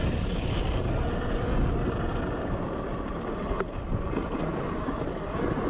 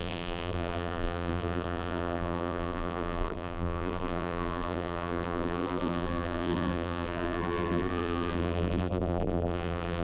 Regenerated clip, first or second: second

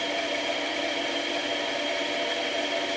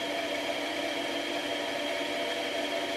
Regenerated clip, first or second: first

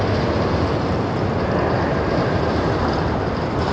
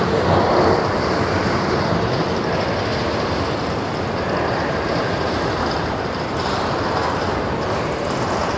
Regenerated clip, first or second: second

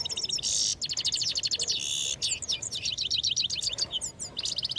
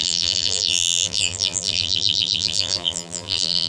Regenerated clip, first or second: second